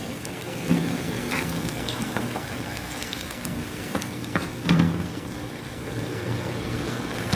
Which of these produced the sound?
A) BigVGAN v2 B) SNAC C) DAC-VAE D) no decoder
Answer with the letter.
B